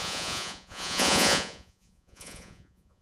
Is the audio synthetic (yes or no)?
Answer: yes